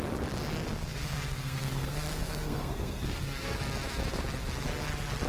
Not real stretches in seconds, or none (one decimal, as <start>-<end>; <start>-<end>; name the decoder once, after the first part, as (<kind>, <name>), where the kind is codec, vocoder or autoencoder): 0.7-3.6 (codec, SNAC)